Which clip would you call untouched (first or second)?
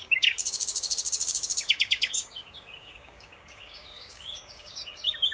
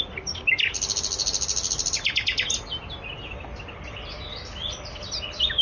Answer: second